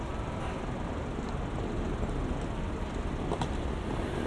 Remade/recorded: recorded